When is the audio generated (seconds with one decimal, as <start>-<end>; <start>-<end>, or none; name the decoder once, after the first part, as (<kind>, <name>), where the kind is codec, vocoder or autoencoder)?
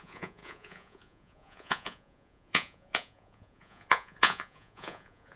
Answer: 0.0-5.4 (vocoder, Vocos)